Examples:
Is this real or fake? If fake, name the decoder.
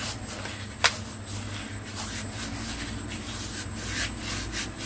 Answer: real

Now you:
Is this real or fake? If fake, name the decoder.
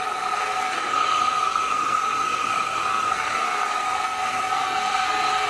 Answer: fake, codec, SNAC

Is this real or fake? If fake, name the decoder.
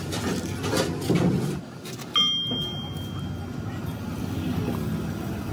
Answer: real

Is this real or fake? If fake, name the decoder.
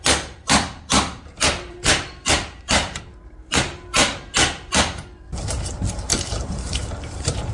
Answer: fake, vocoder, BigVGAN v2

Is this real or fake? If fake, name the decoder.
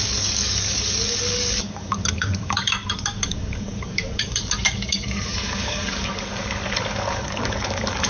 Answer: fake, codec, DAC